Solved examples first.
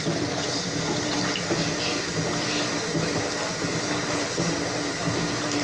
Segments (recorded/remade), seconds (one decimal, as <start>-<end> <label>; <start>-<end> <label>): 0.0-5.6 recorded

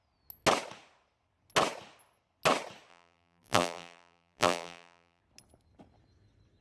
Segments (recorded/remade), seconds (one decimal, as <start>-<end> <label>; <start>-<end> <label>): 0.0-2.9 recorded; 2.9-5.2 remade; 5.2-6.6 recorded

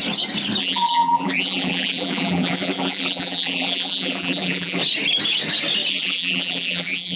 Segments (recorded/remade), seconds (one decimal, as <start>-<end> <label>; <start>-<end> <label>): 0.0-0.6 recorded; 0.6-4.8 remade; 4.8-5.9 recorded; 5.9-7.2 remade